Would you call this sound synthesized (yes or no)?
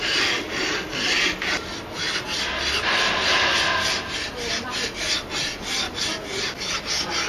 no